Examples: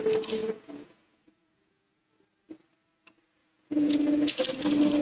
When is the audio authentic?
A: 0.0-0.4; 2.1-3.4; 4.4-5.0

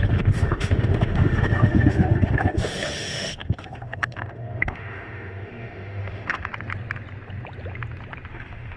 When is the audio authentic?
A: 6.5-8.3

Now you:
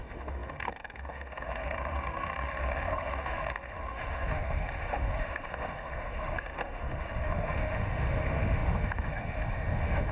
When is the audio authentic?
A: none

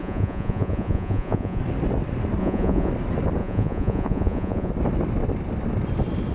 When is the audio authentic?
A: 1.6-2.4; 2.9-3.4; 4.7-6.3

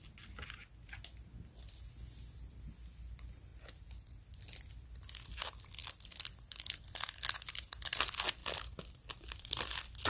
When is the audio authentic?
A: 0.0-3.5; 4.7-5.8; 6.8-8.4; 9.5-10.1

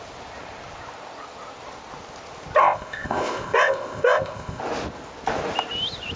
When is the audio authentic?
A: 0.0-2.6; 4.6-6.2